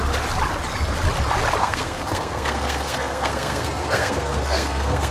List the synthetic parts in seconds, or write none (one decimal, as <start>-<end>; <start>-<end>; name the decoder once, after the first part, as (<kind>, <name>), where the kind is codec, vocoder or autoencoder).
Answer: 1.6-5.1 (codec, SNAC)